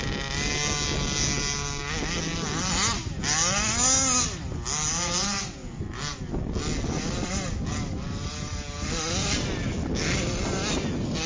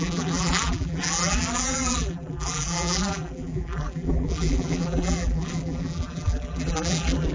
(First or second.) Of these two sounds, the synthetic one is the second